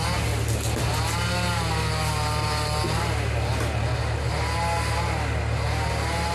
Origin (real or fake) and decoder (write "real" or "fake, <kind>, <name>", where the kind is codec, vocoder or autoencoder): real